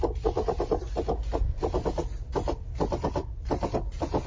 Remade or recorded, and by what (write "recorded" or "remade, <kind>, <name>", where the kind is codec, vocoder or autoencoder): recorded